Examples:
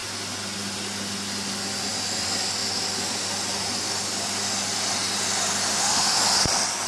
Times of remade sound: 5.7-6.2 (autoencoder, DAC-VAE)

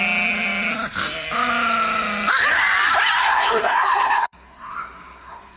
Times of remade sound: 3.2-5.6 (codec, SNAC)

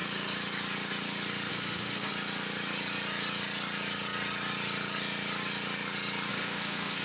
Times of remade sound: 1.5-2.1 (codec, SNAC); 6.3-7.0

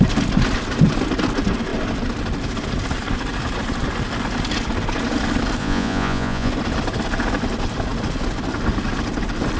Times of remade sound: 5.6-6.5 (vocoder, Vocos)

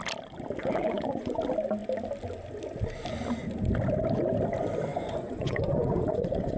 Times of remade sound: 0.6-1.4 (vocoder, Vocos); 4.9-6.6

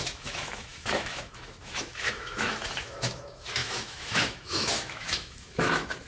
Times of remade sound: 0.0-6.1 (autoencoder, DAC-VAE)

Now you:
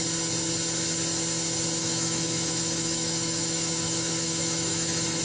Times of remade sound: 1.8-5.2 (autoencoder, DAC-VAE)

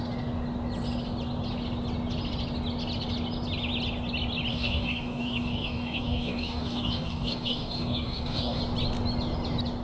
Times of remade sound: 4.5-8.6 (codec, DAC)